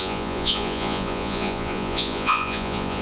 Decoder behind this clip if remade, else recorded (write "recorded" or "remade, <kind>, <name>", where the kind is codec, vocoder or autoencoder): remade, vocoder, Vocos